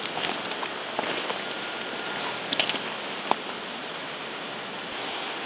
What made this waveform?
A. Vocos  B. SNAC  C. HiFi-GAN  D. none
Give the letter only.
D